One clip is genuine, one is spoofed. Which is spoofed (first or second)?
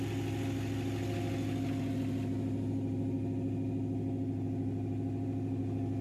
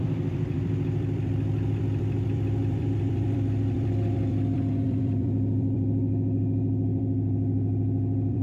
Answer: second